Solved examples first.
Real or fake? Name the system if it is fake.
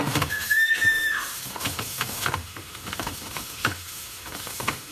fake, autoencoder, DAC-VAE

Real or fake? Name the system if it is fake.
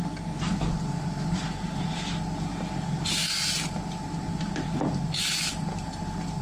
real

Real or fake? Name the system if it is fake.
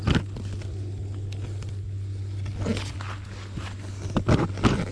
real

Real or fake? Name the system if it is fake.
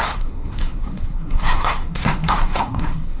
fake, codec, SNAC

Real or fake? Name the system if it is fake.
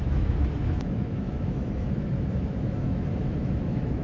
fake, autoencoder, DAC-VAE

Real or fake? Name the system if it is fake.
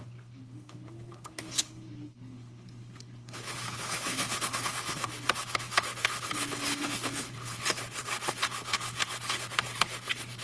fake, codec, HILCodec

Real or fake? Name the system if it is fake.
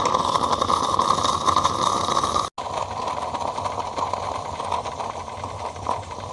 real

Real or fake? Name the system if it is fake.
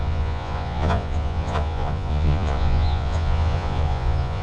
fake, vocoder, Vocos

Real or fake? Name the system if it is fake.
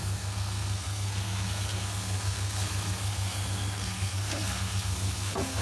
fake, codec, SNAC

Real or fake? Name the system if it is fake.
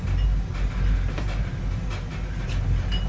real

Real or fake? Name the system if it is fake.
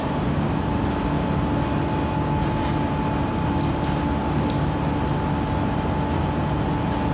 real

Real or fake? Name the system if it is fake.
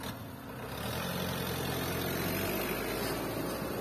real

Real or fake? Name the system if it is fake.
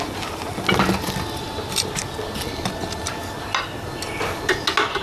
real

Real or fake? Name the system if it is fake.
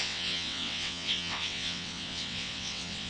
fake, vocoder, WaveNeXt